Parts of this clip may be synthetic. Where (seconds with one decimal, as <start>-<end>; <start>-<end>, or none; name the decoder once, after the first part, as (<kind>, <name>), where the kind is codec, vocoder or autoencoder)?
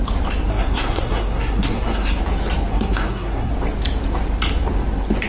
0.5-2.2 (codec, SNAC); 2.7-3.5